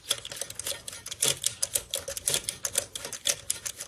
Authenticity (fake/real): real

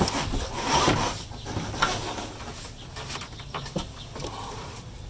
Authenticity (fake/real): real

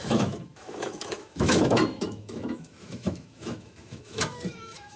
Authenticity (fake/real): fake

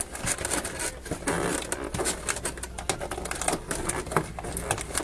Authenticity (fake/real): real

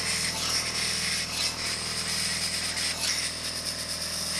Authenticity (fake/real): real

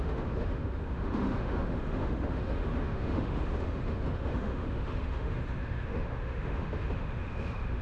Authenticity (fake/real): fake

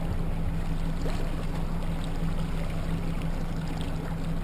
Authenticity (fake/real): real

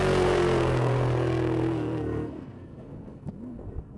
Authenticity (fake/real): fake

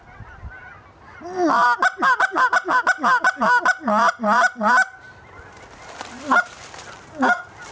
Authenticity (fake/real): real